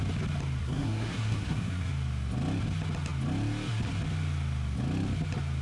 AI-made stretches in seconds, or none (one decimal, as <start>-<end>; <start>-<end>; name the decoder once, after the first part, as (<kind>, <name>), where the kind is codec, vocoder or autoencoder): 0.6-1.9 (codec, SNAC)